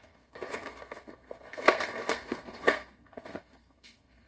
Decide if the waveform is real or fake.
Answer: fake